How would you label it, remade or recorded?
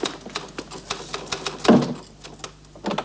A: recorded